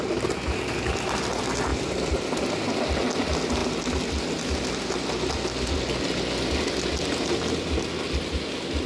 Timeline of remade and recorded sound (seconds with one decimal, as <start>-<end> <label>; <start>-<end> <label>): 0.0-1.7 recorded; 1.7-2.6 remade; 2.6-8.9 recorded